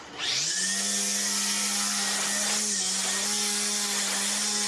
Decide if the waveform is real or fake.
real